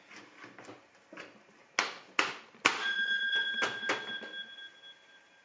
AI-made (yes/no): no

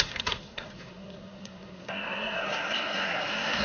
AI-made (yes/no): yes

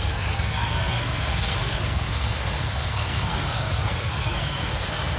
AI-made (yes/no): yes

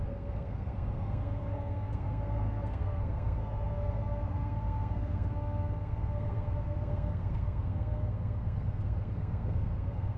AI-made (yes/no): yes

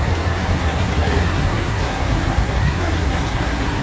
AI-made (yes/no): yes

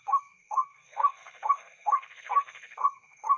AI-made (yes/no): yes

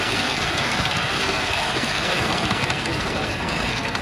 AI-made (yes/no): yes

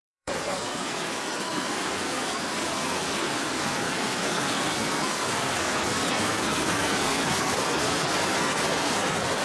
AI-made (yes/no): yes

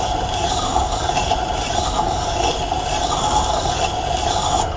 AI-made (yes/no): no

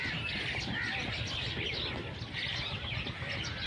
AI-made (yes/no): no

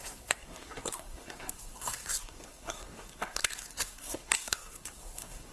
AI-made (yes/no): yes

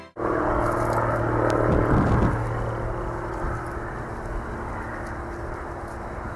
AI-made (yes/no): no